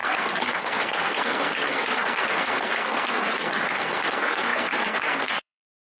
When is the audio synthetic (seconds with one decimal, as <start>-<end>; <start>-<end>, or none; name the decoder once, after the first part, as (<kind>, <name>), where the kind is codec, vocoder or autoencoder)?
0.0-6.0 (codec, SNAC)